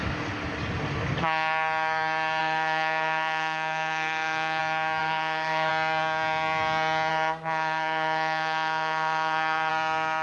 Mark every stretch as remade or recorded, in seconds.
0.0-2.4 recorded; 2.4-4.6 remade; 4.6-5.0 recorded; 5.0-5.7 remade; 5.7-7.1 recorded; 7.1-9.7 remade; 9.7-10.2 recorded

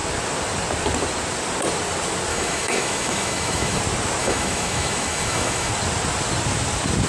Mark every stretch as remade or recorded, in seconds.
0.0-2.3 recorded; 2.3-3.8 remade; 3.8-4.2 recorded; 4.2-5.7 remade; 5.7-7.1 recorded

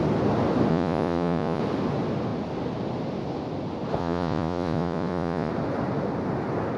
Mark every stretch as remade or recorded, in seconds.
0.0-0.7 recorded; 0.7-1.6 remade; 1.6-4.0 recorded; 4.0-5.5 remade; 5.5-6.8 recorded

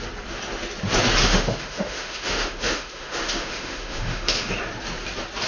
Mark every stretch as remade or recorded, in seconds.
0.0-1.2 recorded; 1.2-4.5 remade; 4.5-5.5 recorded

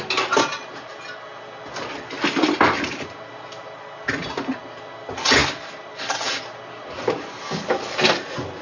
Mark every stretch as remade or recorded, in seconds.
0.0-8.6 recorded